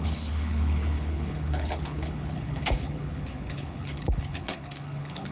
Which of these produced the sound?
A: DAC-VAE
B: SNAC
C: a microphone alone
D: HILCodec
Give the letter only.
D